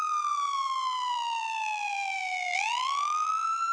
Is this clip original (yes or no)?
no